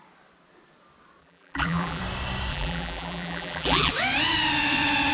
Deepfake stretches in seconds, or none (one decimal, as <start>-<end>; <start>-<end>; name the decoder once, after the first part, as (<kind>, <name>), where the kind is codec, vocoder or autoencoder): 1.2-2.0 (vocoder, BigVGAN v2); 2.5-3.9

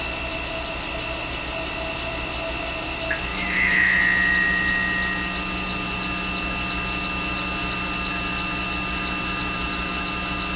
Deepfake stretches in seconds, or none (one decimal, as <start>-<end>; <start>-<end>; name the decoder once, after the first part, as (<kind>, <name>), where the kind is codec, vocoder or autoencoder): 3.3-4.0 (autoencoder, DAC-VAE)

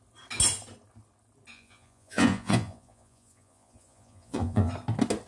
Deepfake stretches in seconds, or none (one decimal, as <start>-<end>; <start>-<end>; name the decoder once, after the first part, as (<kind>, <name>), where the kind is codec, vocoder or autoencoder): 1.5-4.7 (vocoder, Vocos)

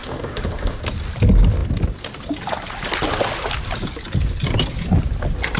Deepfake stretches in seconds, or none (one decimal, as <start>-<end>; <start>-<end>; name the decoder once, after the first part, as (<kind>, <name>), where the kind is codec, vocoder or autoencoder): 0.0-0.8 (autoencoder, DAC-VAE)

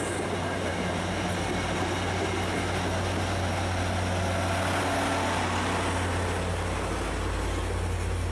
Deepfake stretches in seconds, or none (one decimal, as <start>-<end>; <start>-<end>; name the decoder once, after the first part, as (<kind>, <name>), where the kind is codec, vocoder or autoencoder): none